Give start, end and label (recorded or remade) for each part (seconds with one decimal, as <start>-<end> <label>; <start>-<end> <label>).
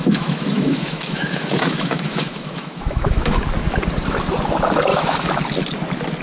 0.0-3.4 remade; 3.4-4.9 recorded; 4.9-5.4 remade; 5.4-6.2 recorded